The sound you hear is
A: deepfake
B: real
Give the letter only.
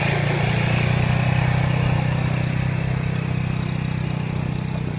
B